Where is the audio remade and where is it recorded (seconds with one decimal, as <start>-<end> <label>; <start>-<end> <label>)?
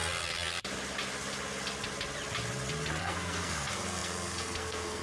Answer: 0.0-3.0 recorded; 3.0-5.0 remade